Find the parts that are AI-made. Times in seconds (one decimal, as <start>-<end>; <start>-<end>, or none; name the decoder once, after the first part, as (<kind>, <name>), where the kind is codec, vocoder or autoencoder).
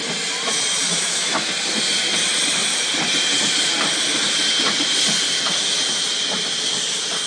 0.9-1.5 (autoencoder, DAC-VAE)